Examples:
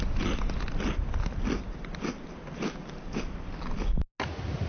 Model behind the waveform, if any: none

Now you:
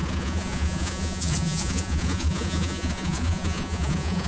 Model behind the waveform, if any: vocoder, Vocos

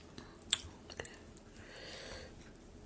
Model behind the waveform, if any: none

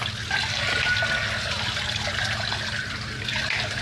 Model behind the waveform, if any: none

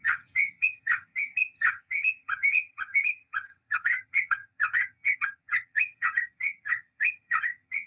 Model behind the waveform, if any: vocoder, HiFi-GAN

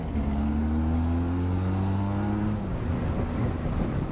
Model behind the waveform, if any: none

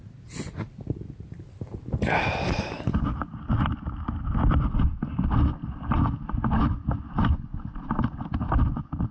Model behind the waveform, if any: none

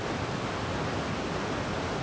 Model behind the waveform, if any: none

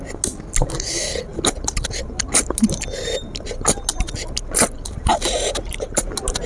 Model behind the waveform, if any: none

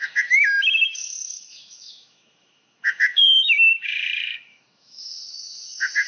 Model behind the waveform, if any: autoencoder, DAC-VAE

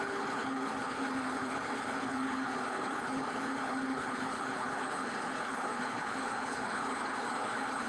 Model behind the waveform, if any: codec, HILCodec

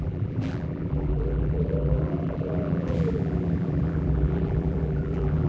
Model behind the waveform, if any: vocoder, BigVGAN v2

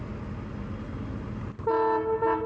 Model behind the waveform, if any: none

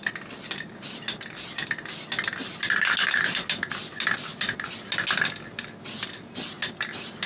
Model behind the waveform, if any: none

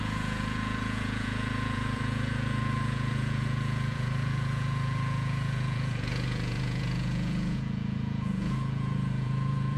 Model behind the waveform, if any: vocoder, Vocos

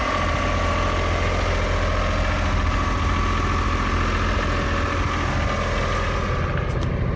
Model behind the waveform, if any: none